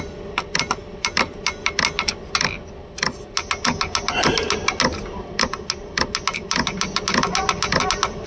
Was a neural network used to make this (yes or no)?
no